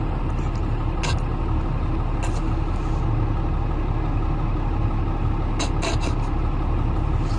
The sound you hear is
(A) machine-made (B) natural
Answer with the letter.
B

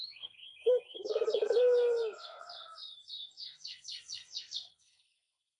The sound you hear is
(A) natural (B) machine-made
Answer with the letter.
B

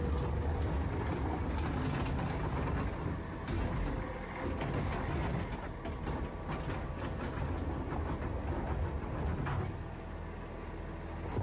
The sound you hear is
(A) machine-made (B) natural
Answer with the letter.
B